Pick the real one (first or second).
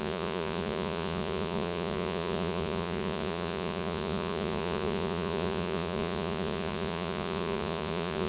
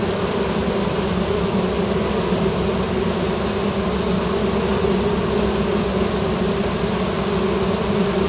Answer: second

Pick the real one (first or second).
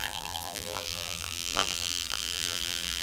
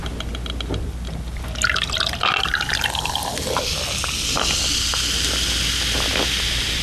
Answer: second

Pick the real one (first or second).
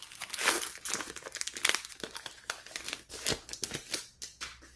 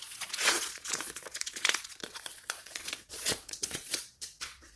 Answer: first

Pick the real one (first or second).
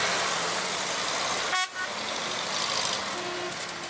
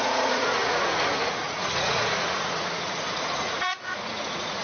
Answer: first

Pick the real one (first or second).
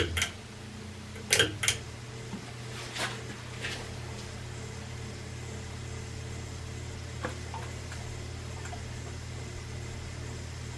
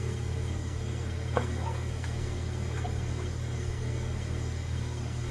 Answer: first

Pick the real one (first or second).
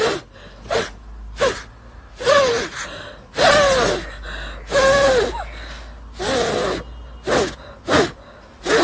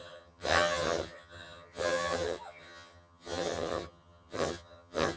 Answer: first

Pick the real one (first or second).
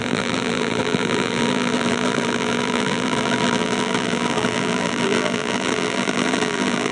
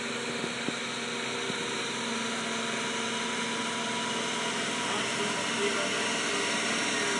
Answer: second